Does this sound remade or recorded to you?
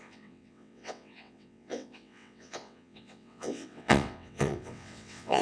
remade